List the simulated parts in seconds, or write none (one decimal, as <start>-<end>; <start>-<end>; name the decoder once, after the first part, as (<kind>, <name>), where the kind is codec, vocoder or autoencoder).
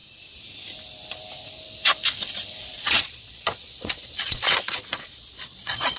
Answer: 2.6-6.0 (vocoder, Vocos)